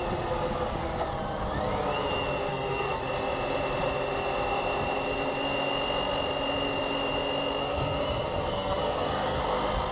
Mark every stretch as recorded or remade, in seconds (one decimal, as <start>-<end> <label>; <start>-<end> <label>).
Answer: 0.0-2.5 recorded; 2.5-3.0 remade; 3.0-7.6 recorded; 7.6-9.4 remade; 9.4-9.9 recorded